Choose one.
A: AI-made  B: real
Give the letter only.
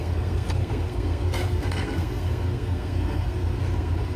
A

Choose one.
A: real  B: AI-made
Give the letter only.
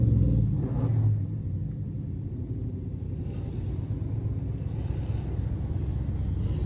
A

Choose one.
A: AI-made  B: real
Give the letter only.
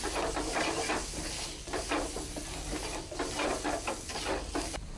B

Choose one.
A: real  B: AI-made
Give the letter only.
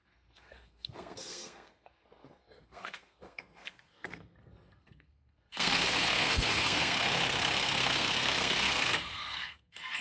B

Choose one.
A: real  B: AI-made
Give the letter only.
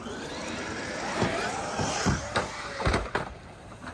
A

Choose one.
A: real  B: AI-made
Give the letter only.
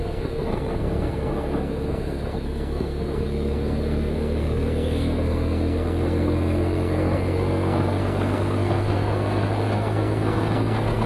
B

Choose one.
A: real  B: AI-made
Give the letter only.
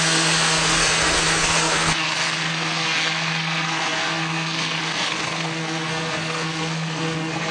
B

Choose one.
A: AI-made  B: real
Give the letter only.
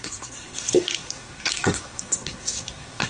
A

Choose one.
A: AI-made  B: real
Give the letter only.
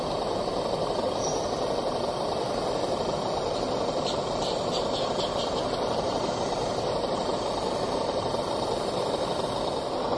B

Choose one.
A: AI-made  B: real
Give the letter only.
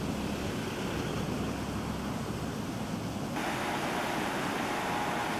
B